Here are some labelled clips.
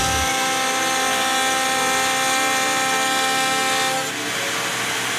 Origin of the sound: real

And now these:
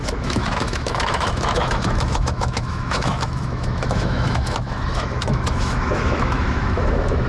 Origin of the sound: fake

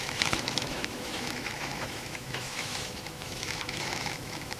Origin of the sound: fake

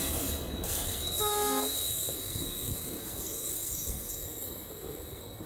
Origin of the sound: fake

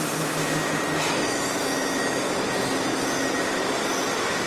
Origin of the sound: real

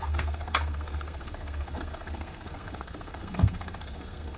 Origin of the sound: fake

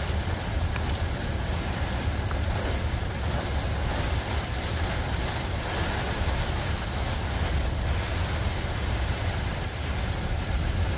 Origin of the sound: real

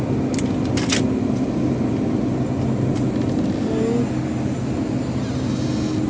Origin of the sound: real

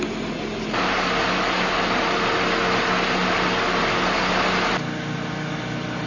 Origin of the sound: real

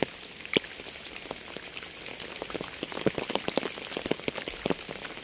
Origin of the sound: real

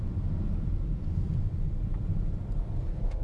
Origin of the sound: fake